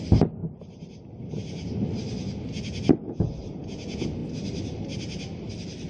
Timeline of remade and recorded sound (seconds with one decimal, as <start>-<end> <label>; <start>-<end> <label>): 0.0-5.9 recorded